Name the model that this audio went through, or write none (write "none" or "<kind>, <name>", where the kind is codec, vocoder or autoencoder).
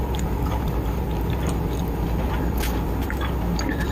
none